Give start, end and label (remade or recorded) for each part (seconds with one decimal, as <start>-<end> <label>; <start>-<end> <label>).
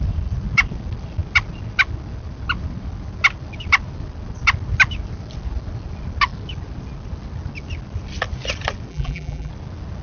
0.0-8.9 recorded; 8.9-9.5 remade; 9.5-10.0 recorded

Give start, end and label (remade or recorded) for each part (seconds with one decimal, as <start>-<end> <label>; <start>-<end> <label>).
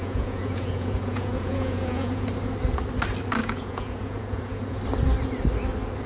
0.0-2.3 remade; 2.3-3.4 recorded; 3.4-4.8 remade; 4.8-6.1 recorded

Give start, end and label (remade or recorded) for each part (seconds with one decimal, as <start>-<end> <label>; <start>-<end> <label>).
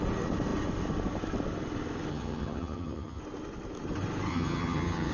0.0-2.1 recorded; 2.1-3.2 remade; 3.2-4.3 recorded; 4.3-5.1 remade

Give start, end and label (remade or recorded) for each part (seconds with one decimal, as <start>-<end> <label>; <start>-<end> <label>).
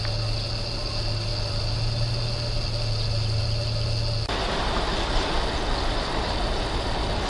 0.0-7.3 recorded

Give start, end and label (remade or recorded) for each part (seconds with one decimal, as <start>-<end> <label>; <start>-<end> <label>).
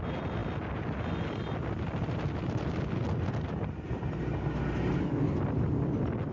0.0-6.3 recorded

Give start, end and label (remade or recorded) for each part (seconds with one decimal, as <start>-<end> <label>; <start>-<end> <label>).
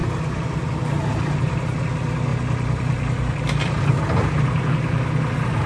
0.0-2.3 recorded; 2.3-4.0 remade; 4.0-5.7 recorded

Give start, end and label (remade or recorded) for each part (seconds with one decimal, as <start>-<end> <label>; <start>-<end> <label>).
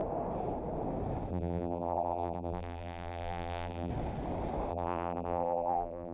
0.0-1.3 recorded; 1.3-3.9 remade; 3.9-4.7 recorded; 4.7-6.1 remade